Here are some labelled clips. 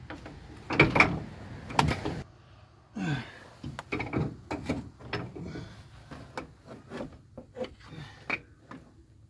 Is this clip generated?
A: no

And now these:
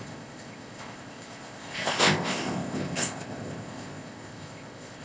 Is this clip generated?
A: yes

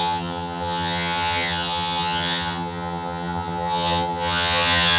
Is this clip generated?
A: yes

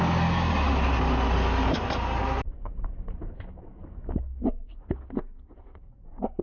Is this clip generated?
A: no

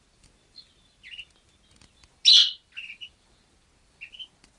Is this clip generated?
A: no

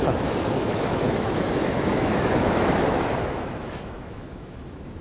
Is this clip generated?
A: yes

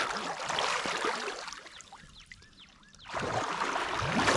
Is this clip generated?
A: yes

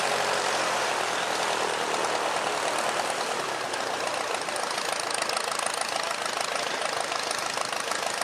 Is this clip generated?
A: no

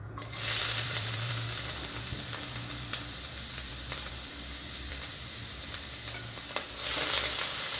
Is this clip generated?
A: yes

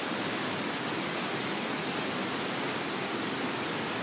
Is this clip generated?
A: no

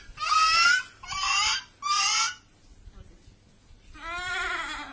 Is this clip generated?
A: no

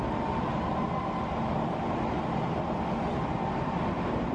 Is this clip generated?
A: no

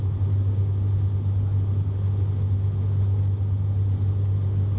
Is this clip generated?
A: no